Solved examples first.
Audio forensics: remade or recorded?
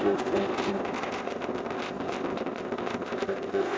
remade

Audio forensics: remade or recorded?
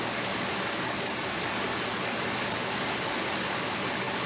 remade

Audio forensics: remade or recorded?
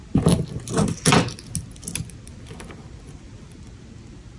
recorded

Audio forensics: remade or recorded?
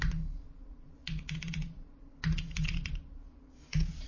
remade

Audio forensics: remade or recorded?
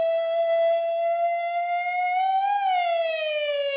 recorded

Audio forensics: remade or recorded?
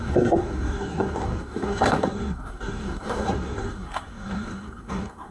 remade